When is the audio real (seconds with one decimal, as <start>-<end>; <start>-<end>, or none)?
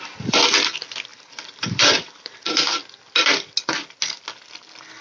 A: 0.0-1.1; 2.4-5.0